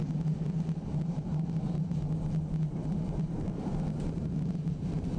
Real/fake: fake